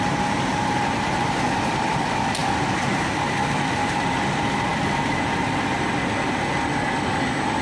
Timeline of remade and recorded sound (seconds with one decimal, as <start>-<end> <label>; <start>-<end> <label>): 0.0-0.5 recorded; 0.5-1.9 remade; 1.9-2.4 recorded; 2.4-3.4 remade; 3.4-7.6 recorded